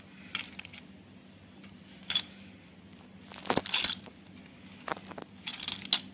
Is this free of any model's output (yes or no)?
yes